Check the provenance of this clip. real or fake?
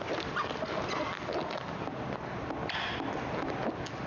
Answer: real